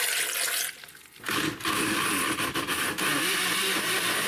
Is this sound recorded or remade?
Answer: recorded